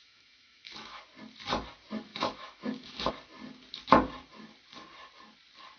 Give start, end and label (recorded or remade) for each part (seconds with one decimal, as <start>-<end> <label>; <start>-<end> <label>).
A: 0.0-1.0 remade; 1.0-2.1 recorded; 2.1-3.1 remade; 3.1-5.8 recorded